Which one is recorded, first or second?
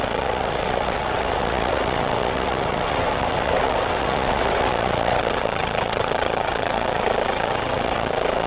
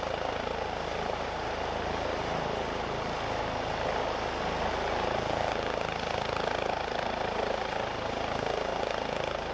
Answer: second